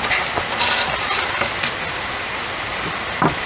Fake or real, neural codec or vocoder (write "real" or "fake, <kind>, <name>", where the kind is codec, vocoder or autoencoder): real